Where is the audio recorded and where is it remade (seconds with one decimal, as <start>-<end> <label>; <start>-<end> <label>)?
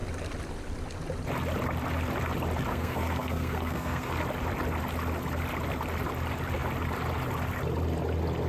0.0-2.7 recorded; 2.7-4.1 remade; 4.1-8.5 recorded